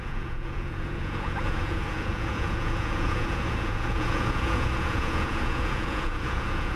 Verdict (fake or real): fake